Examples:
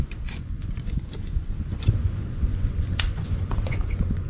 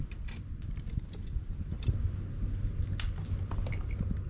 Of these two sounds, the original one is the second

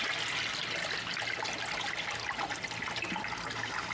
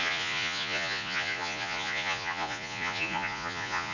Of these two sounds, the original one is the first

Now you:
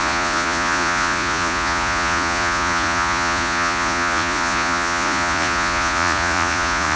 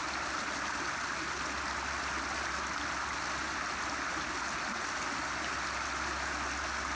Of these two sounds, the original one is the second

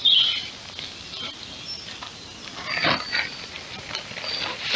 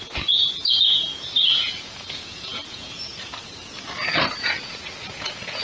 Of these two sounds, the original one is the first